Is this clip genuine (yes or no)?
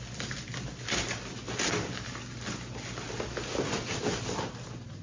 yes